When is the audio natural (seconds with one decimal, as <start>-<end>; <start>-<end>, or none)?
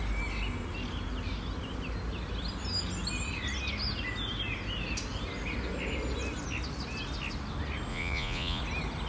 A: 0.0-7.9; 8.6-9.1